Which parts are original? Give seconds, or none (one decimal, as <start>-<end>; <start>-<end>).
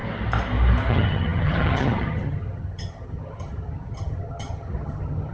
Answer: 0.0-0.9